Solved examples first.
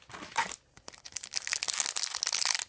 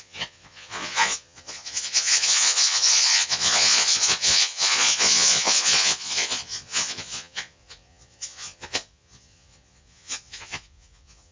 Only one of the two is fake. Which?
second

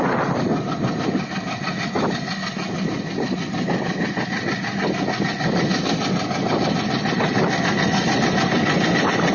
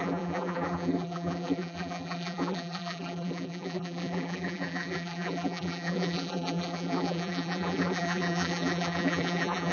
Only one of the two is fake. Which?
second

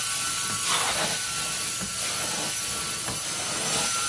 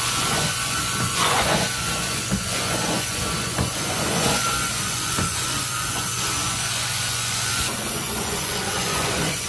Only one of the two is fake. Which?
second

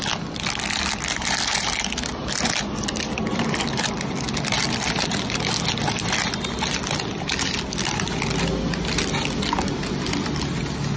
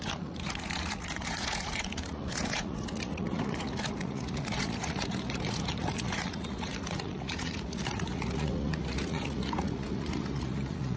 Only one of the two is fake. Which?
second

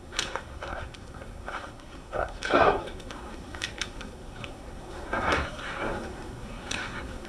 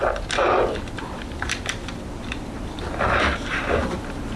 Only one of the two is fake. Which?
first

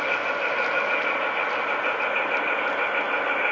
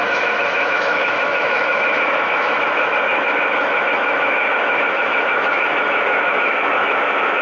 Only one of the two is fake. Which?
second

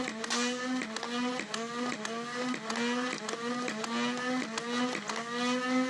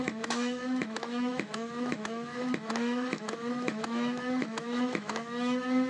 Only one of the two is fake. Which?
second